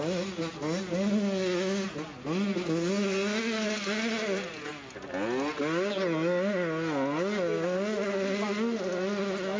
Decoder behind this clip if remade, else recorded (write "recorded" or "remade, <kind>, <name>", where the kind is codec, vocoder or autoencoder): recorded